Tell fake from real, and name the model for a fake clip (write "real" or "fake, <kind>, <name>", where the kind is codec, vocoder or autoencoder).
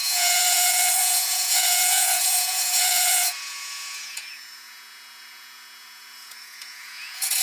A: fake, vocoder, Vocos